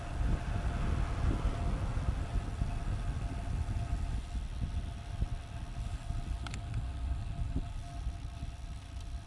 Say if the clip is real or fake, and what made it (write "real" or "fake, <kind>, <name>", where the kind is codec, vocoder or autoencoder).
real